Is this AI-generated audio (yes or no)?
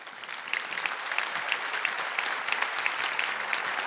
no